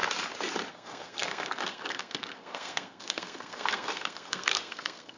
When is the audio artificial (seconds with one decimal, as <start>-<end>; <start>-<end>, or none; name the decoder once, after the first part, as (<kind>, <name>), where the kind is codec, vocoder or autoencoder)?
0.7-5.2 (codec, SNAC)